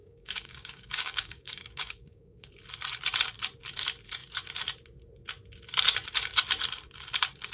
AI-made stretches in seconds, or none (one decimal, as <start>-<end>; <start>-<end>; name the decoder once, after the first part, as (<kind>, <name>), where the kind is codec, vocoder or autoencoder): 0.0-2.5 (codec, DAC)